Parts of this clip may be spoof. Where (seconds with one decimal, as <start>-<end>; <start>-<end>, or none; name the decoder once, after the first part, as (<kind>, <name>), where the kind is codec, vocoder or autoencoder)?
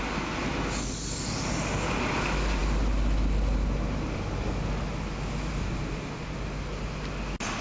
none